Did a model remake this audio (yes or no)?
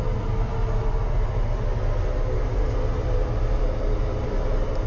no